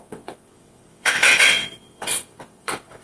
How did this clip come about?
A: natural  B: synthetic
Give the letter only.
B